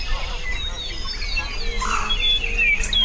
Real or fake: real